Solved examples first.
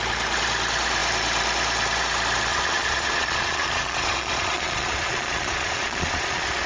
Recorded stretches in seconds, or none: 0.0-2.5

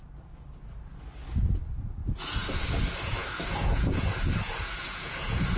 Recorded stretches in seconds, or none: 0.0-2.0

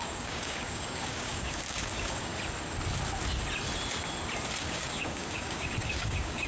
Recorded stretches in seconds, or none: 2.3-4.6

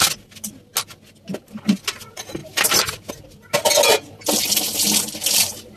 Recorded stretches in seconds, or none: 0.0-5.8

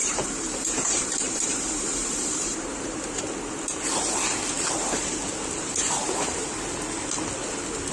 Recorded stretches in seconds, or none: 3.2-6.0; 6.5-7.9